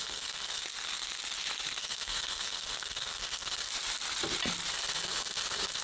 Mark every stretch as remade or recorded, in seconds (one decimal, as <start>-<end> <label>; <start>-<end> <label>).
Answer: 0.0-0.6 remade; 0.6-1.8 recorded; 1.8-3.7 remade; 3.7-4.7 recorded; 4.7-5.8 remade

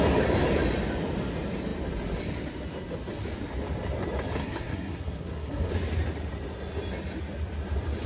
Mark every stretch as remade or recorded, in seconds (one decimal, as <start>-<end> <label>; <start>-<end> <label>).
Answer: 0.0-4.4 recorded; 4.4-5.7 remade; 5.7-8.1 recorded

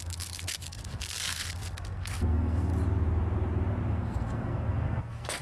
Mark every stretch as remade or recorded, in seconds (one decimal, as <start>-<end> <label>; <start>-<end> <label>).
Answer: 0.0-2.7 remade; 2.7-3.9 recorded; 3.9-5.4 remade

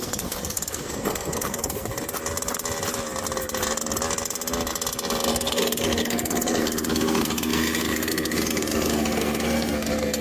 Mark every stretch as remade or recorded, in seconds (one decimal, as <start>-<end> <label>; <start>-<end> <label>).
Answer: 0.0-1.9 remade; 1.9-5.3 recorded; 5.3-10.2 remade